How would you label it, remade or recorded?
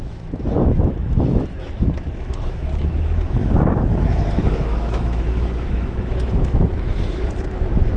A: remade